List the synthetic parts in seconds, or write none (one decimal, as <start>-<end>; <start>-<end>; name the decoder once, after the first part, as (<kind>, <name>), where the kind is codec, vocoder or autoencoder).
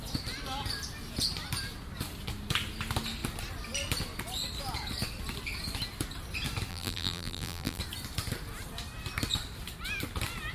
6.7-7.8 (vocoder, BigVGAN v2)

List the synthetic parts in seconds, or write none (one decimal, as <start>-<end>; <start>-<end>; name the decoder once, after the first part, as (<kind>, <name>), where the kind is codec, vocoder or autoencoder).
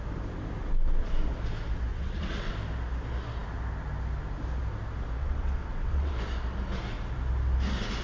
1.9-2.5 (vocoder, WaveNeXt); 5.2-6.1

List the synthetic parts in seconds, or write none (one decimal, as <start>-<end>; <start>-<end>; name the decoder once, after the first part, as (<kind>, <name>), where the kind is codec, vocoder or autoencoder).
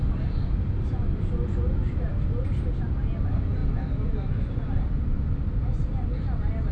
none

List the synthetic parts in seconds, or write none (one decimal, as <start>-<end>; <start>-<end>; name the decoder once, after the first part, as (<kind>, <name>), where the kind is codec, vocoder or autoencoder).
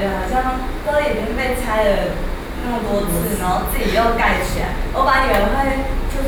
none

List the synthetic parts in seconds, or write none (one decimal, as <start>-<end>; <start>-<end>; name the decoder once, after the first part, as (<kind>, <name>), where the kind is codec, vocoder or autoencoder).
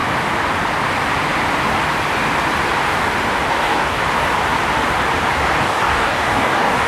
3.5-4.0 (codec, DAC); 5.6-6.9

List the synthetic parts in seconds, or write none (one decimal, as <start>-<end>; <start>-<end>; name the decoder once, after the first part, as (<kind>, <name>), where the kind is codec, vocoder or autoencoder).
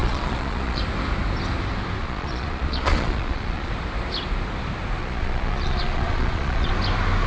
0.0-0.8 (vocoder, Vocos); 2.0-3.7; 5.0-6.7